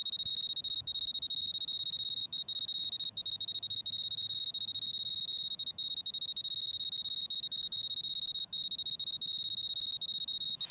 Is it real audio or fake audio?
fake